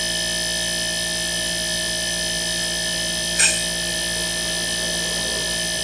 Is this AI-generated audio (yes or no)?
no